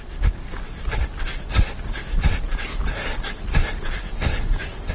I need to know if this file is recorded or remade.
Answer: recorded